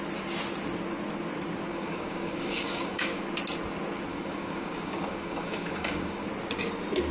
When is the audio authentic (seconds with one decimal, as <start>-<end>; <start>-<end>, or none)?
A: 0.0-1.7; 3.2-4.1; 6.3-7.1